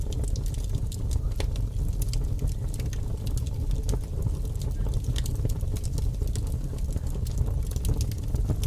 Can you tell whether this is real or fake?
real